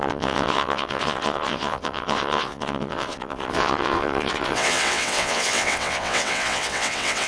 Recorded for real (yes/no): no